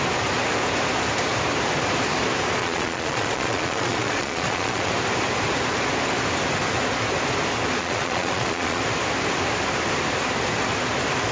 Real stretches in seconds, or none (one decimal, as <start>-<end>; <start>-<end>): 0.0-2.6; 4.9-7.8; 8.8-11.3